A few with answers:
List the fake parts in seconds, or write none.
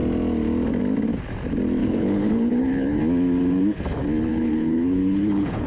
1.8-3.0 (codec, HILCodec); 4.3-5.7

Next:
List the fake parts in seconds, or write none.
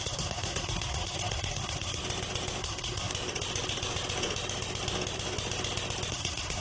0.0-2.0 (codec, SNAC); 2.6-3.1; 6.1-6.6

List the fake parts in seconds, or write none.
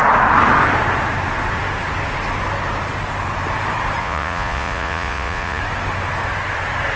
4.0-5.6 (vocoder, Vocos)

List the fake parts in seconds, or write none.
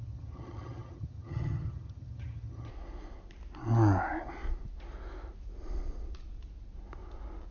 0.0-2.7 (vocoder, HiFi-GAN)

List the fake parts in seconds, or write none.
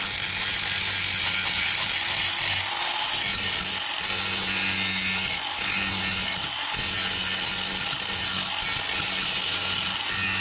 none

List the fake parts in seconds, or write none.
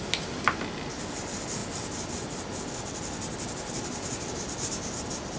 none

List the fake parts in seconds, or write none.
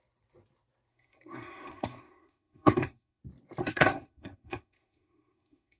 0.9-3.2 (codec, SNAC); 3.6-5.8